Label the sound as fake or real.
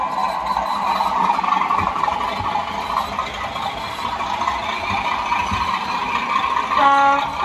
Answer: real